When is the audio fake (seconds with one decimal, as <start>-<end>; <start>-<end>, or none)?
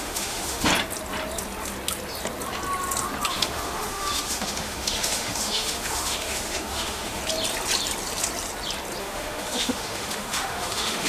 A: 0.0-0.7; 3.3-7.2; 9.0-11.1